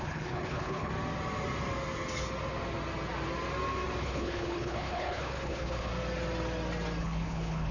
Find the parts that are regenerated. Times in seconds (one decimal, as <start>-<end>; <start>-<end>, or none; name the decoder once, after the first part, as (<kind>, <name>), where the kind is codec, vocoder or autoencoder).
0.0-0.9 (codec, HILCodec); 4.0-5.9; 7.0-7.7